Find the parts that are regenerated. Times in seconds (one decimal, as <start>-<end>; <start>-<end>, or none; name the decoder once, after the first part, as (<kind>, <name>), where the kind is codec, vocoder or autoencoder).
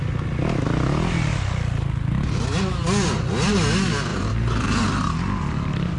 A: 4.1-4.8 (vocoder, BigVGAN v2)